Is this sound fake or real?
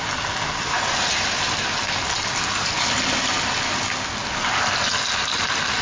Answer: real